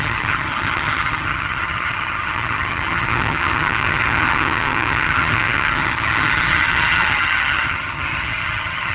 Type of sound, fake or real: fake